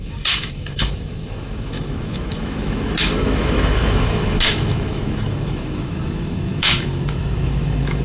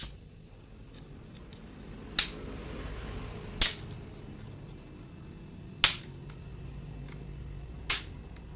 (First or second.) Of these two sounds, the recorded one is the second